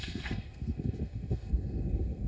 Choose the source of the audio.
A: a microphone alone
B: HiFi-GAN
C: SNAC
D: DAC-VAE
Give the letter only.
C